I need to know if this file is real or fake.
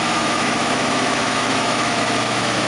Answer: fake